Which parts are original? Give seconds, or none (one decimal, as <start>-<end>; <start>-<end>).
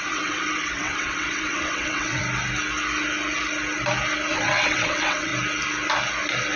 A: 2.2-4.3; 5.3-6.6